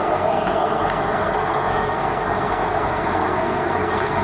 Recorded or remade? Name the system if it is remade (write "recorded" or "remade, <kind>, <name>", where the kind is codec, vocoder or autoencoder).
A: remade, codec, SNAC